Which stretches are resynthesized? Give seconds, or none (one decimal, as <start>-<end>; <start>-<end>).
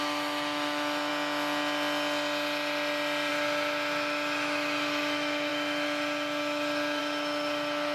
0.0-1.1; 3.3-7.9